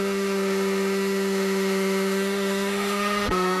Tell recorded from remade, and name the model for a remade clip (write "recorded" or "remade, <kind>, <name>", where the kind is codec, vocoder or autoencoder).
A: remade, autoencoder, DAC-VAE